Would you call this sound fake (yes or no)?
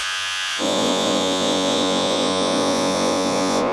yes